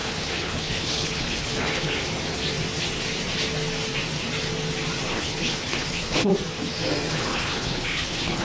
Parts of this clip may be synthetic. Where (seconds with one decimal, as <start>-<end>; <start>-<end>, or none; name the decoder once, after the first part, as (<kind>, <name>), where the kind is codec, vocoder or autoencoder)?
0.0-2.0 (codec, HILCodec); 5.1-6.3; 7.1-8.4